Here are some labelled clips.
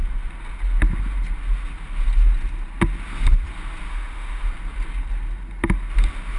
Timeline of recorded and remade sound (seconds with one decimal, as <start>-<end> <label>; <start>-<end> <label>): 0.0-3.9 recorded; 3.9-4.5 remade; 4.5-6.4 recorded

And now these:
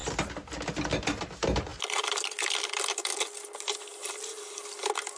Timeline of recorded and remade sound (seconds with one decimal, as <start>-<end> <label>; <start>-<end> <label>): 0.0-5.2 recorded

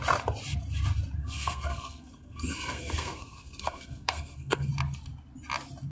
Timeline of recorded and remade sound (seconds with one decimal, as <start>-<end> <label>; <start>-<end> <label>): 0.0-1.2 recorded; 1.2-4.7 remade; 4.7-5.9 recorded

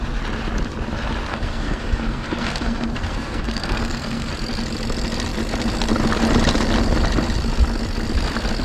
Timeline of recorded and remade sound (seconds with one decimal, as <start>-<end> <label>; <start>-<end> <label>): 0.0-1.3 recorded; 1.3-4.3 remade; 4.3-8.6 recorded